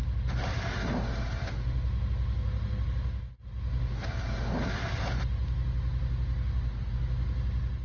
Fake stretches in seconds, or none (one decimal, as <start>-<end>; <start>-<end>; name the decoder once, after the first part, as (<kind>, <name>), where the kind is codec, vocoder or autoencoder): none